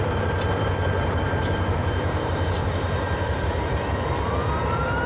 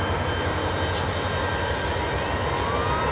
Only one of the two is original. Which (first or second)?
second